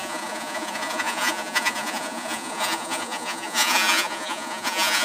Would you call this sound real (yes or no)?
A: no